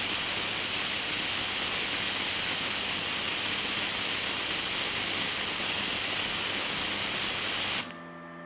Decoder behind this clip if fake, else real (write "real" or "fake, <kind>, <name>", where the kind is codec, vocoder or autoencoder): real